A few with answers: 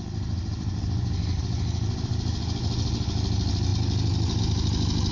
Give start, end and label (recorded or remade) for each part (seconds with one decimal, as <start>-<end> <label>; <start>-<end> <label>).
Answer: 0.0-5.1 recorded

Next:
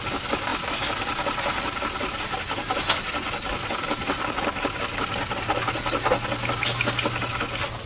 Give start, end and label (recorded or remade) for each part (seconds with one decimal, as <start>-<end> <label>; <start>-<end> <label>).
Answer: 0.0-7.9 recorded

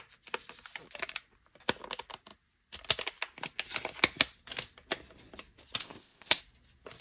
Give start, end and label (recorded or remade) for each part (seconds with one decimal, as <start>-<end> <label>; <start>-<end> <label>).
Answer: 0.0-5.8 recorded; 5.8-6.4 remade; 6.4-7.0 recorded

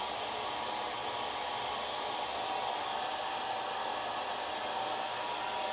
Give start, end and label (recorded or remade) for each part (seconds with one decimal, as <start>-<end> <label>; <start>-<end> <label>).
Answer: 0.0-1.0 recorded; 1.0-3.9 remade; 3.9-5.7 recorded